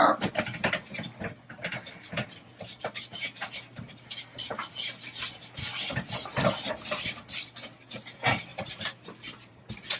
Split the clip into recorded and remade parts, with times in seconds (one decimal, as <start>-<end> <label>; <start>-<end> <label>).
0.0-1.7 recorded; 1.7-2.5 remade; 2.5-3.1 recorded; 3.1-3.9 remade; 3.9-8.5 recorded; 8.5-9.6 remade; 9.6-10.0 recorded